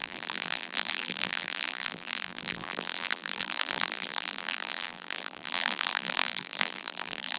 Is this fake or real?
fake